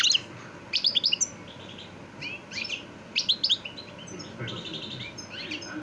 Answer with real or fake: real